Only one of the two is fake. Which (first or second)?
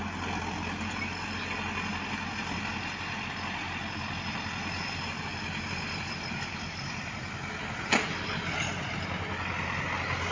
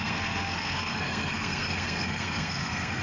second